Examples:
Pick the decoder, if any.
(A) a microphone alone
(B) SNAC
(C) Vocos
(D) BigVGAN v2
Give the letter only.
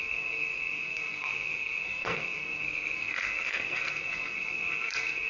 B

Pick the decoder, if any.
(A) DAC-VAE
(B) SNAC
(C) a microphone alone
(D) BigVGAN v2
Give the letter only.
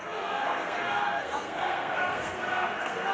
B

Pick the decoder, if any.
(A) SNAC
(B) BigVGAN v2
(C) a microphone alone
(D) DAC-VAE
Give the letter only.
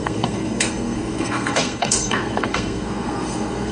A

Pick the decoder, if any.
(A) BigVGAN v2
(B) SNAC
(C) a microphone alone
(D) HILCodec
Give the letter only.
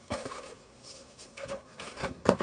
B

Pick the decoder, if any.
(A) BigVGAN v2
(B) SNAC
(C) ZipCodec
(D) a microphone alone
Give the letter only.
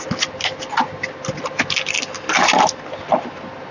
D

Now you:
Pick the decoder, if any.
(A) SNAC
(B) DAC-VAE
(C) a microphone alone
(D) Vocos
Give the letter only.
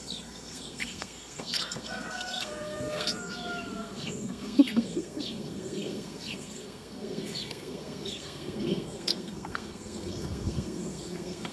A